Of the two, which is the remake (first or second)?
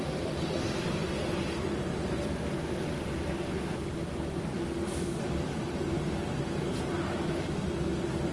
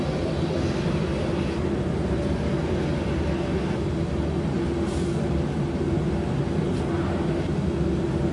first